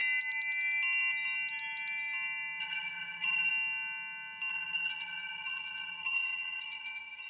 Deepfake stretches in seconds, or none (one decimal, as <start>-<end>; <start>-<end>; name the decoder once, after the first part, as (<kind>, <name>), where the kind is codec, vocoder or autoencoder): 2.6-3.5 (vocoder, HiFi-GAN); 4.5-7.3